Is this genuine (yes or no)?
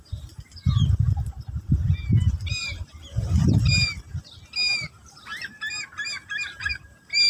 yes